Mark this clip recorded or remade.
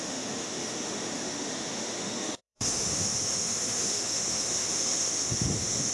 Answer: remade